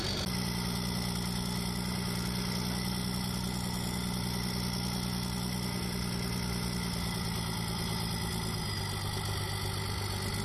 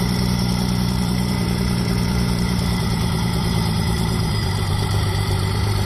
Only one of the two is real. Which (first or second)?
first